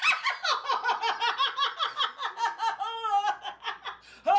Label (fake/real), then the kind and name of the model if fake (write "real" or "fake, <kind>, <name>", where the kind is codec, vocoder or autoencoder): real